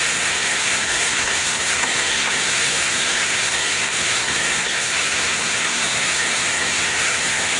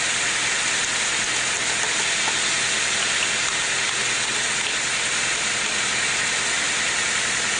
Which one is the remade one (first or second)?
first